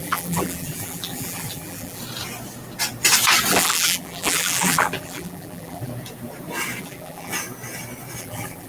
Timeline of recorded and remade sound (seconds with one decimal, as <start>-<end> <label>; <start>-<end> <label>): 0.0-2.0 remade; 2.0-3.5 recorded; 3.5-5.9 remade; 5.9-6.8 recorded; 6.8-7.3 remade; 7.3-8.2 recorded; 8.2-8.7 remade